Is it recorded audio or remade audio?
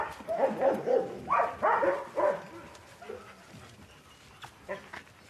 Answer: recorded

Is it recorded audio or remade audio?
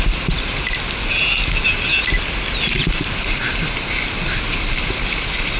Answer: recorded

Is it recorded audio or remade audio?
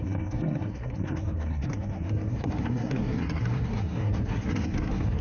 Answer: remade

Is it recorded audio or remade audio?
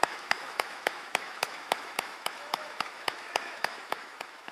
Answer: remade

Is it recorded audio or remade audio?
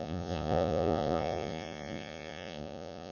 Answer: remade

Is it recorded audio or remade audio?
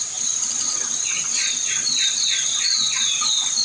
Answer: recorded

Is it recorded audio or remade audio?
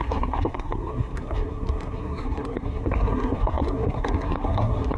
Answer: remade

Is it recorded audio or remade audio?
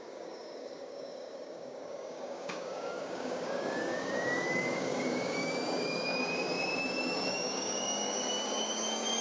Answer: remade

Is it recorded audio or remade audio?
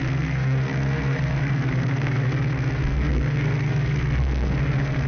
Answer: remade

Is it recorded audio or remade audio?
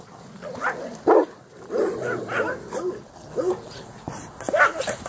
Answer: recorded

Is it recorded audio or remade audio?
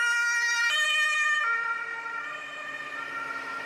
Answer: recorded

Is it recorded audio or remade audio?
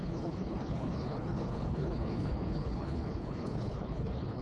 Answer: remade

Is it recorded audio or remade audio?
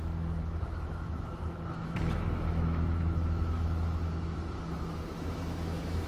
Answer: remade